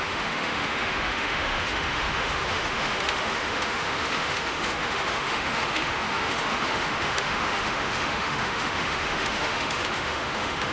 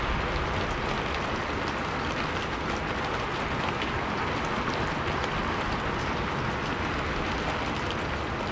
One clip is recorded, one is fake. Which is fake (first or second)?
first